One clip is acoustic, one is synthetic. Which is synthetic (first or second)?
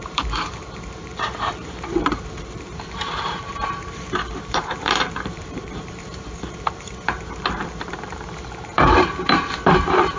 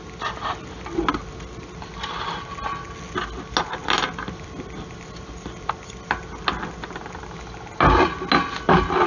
first